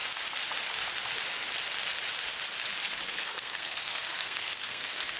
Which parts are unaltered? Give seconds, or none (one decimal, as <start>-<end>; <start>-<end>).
0.0-3.1